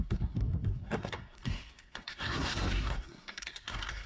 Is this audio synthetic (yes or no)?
yes